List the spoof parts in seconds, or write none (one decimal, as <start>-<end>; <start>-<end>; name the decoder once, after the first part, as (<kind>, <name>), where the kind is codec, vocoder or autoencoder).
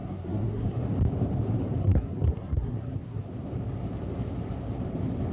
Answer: 0.0-0.8 (codec, SNAC); 1.8-3.2